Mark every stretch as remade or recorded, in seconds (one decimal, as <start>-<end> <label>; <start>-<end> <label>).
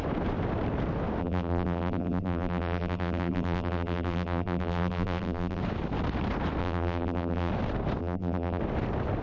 0.0-1.2 recorded; 1.2-5.6 remade; 5.6-6.6 recorded; 6.6-7.5 remade; 7.5-8.0 recorded; 8.0-8.6 remade; 8.6-9.2 recorded